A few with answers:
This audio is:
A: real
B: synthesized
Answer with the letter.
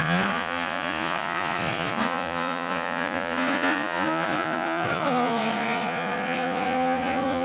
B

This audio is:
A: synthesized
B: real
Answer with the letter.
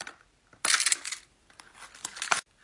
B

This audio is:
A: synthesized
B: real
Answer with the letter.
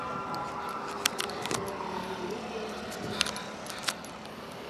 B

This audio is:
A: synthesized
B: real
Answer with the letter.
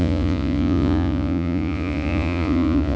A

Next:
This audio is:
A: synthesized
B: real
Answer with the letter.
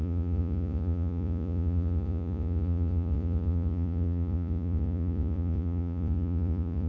A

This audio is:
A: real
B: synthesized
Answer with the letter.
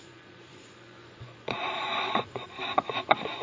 B